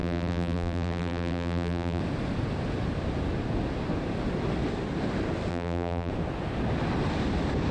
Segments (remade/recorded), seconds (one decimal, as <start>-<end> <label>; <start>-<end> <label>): 0.0-2.0 remade; 2.0-5.5 recorded; 5.5-6.1 remade; 6.1-7.7 recorded